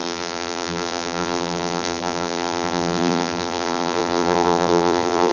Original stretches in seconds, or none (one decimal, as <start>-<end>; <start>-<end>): none